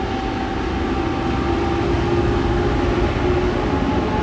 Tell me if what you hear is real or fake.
real